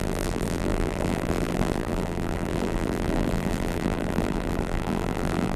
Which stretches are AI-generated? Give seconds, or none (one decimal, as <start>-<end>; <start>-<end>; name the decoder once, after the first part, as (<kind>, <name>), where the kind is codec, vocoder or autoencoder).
0.0-5.6 (vocoder, BigVGAN v2)